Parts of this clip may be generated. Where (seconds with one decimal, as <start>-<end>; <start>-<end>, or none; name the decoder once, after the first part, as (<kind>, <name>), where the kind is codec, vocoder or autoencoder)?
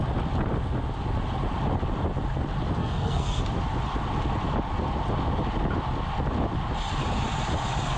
2.8-3.4 (codec, SNAC)